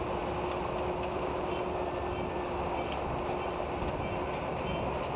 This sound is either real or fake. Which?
real